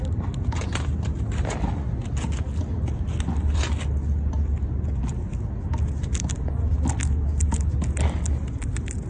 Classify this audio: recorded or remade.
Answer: recorded